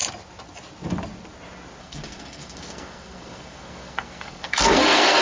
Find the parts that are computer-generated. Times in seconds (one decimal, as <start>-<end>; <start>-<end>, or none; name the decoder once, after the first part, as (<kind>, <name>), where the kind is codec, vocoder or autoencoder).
1.8-5.2 (codec, SNAC)